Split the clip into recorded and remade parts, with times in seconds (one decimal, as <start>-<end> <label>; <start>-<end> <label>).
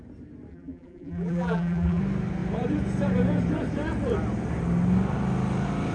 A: 0.0-0.5 recorded; 0.5-2.0 remade; 2.0-5.9 recorded